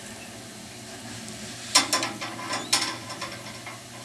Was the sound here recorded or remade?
recorded